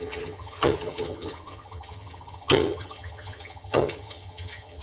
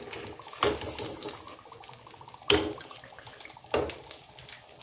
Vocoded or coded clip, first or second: first